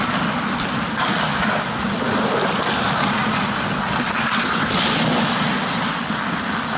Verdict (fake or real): real